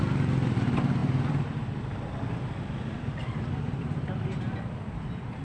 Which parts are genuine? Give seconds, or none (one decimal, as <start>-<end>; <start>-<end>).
0.0-1.0; 4.2-5.4